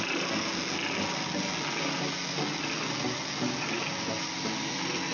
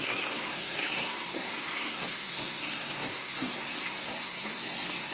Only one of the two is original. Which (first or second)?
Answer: first